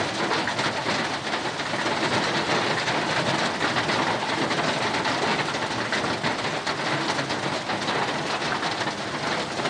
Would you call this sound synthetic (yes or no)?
no